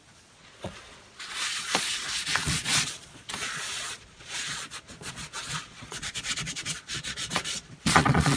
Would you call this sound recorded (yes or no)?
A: no